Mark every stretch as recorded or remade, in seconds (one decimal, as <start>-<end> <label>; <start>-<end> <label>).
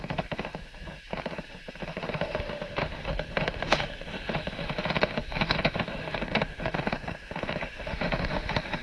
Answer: 0.0-8.8 remade